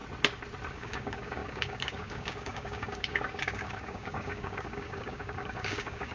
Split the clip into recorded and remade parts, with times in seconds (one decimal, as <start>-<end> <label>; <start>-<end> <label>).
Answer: 0.0-0.7 recorded; 0.7-6.1 remade

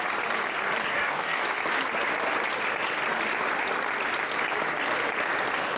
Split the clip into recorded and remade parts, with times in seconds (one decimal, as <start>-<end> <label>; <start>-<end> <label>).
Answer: 0.0-0.9 recorded; 0.9-1.4 remade; 1.4-5.8 recorded

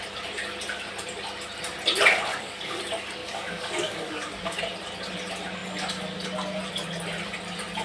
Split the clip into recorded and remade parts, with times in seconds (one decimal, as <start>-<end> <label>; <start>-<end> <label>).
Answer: 0.0-2.3 recorded; 2.3-2.8 remade; 2.8-3.2 recorded; 3.2-4.6 remade; 4.6-7.8 recorded